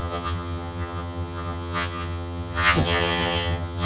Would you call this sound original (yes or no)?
no